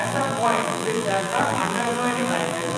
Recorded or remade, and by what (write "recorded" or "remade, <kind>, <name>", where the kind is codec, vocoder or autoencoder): remade, vocoder, BigVGAN v2